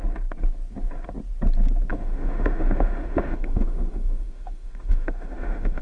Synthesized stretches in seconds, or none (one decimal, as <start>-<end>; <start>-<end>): 1.9-5.8